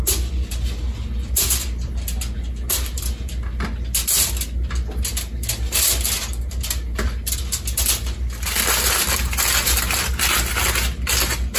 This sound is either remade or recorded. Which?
recorded